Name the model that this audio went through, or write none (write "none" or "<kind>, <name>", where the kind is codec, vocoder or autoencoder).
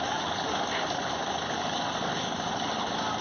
none